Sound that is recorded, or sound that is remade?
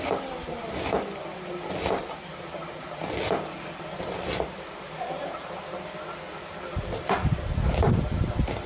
recorded